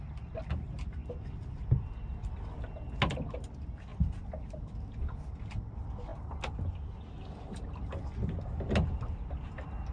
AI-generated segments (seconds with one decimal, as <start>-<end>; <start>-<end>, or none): none